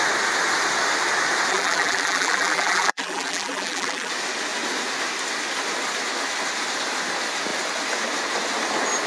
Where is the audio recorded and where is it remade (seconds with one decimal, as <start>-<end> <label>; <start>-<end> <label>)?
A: 0.0-1.5 recorded; 1.5-4.1 remade; 4.1-9.1 recorded